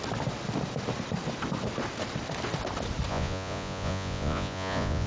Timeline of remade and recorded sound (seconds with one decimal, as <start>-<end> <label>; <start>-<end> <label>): 0.0-3.1 recorded; 3.1-5.1 remade